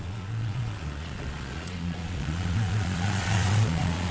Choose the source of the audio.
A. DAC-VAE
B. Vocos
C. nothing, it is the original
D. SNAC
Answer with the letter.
B